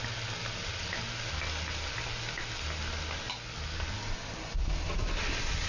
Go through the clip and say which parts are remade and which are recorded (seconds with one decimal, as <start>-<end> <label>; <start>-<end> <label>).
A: 0.0-5.7 recorded